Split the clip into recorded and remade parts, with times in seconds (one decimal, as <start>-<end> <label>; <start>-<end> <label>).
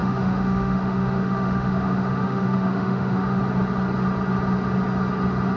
0.0-3.4 remade; 3.4-5.6 recorded